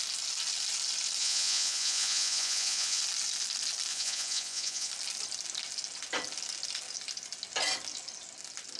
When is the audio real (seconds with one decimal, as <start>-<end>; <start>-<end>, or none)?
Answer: 0.0-1.2; 3.0-3.9; 4.9-8.8